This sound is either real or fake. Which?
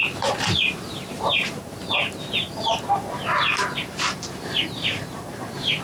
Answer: fake